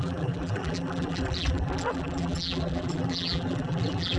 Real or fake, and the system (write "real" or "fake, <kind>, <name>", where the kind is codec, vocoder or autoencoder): fake, vocoder, BigVGAN v2